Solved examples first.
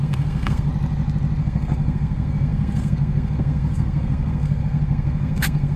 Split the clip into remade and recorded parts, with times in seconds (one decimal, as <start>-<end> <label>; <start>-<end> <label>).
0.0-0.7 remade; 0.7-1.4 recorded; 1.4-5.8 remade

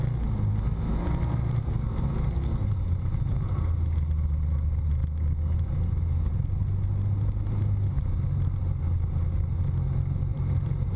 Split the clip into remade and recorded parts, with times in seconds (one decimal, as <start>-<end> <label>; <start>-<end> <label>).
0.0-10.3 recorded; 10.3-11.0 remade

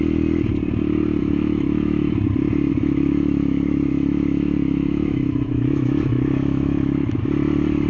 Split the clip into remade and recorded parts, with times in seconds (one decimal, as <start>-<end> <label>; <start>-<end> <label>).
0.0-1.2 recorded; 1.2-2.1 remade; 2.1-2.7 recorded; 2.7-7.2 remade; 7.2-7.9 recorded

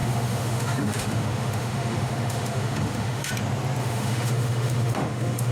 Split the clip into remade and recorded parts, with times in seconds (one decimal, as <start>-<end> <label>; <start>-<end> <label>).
0.0-3.3 remade; 3.3-3.8 recorded; 3.8-5.5 remade

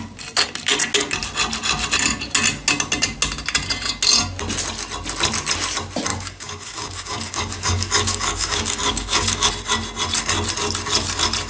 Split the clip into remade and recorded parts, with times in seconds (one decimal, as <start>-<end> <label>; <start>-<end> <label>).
0.0-6.1 recorded; 6.1-9.5 remade; 9.5-11.5 recorded